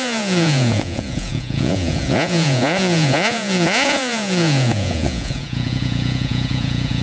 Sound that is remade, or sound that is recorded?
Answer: remade